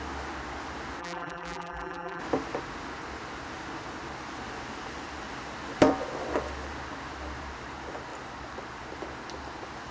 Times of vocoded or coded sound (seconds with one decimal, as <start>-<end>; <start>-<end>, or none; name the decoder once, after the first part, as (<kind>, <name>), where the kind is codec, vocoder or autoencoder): 1.0-2.2 (vocoder, BigVGAN v2)